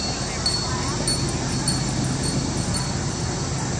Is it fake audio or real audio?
real